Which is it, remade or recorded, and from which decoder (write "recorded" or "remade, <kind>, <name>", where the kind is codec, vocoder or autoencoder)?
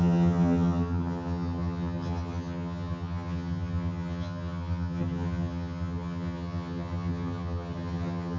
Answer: remade, vocoder, HiFi-GAN